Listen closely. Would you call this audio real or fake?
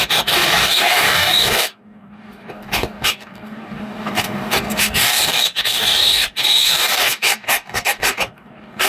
fake